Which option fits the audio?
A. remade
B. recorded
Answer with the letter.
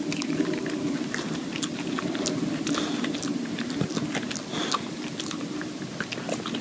B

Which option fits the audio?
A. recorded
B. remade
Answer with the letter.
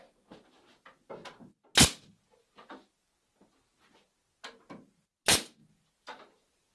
A